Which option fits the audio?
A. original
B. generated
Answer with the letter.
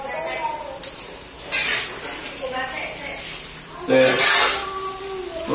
A